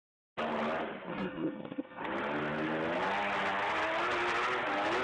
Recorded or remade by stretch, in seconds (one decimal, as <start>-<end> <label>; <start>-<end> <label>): 0.0-1.1 recorded; 1.1-2.0 remade; 2.0-5.0 recorded